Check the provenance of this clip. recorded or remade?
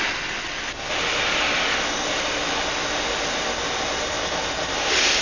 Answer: recorded